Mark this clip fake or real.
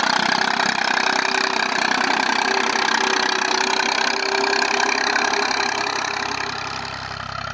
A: real